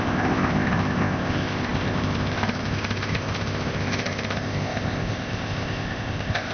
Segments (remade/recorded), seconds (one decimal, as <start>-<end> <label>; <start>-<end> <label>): 0.0-6.5 remade